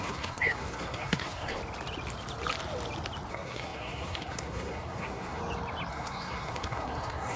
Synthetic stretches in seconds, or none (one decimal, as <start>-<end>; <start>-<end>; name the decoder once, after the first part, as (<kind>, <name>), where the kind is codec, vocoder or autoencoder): 0.0-1.6 (codec, SNAC); 3.3-5.4; 5.9-7.4